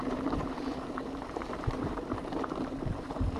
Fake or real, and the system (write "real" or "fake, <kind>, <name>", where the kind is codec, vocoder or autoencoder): fake, vocoder, BigVGAN v2